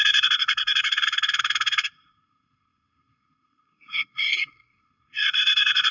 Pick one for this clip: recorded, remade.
remade